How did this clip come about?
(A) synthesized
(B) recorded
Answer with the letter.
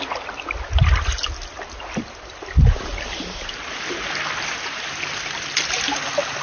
B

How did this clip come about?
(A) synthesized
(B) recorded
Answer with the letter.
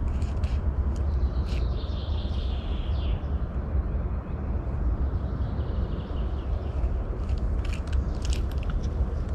B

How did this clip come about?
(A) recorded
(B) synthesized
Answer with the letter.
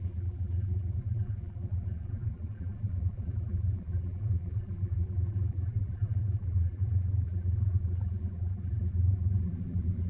B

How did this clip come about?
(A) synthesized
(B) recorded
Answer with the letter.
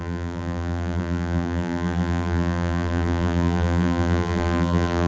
A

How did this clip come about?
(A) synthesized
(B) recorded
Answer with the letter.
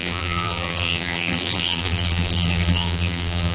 A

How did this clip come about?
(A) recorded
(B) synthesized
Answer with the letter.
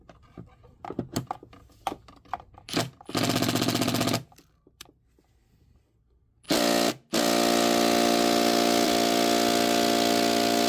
A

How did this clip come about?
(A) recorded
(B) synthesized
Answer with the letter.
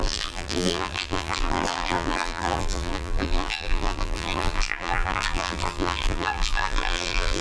B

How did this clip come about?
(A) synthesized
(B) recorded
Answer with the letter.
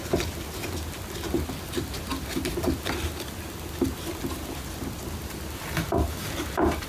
B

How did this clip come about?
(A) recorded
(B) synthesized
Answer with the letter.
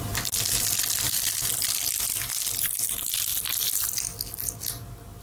A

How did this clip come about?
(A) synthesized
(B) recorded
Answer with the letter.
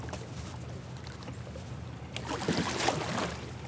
B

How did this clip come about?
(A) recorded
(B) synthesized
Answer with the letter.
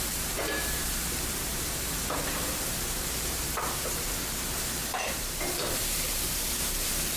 B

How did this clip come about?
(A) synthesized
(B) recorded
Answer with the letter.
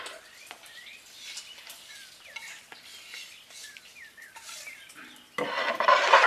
B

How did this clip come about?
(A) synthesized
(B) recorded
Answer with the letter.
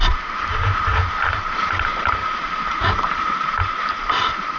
A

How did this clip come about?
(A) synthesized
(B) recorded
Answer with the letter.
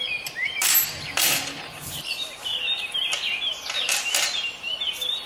A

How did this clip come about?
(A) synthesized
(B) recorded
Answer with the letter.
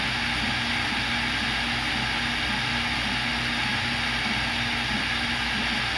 B